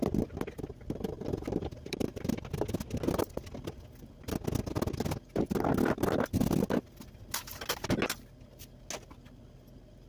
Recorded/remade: recorded